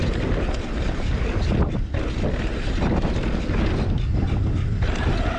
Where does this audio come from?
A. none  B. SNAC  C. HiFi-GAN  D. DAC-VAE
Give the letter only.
A